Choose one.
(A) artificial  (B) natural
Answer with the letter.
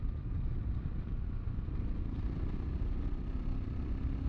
B